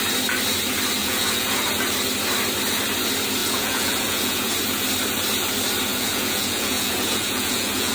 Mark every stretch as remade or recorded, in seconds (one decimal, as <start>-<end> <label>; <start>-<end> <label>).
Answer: 0.0-1.0 recorded; 1.0-1.5 remade; 1.5-3.4 recorded; 3.4-4.5 remade; 4.5-5.9 recorded; 5.9-7.9 remade